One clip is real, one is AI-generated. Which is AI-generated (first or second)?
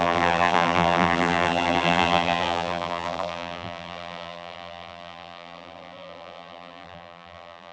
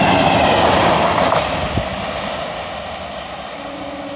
first